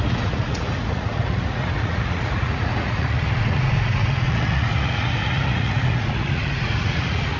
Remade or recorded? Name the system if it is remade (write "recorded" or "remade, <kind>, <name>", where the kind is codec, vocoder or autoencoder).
remade, vocoder, Vocos